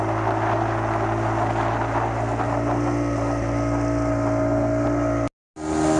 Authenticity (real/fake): real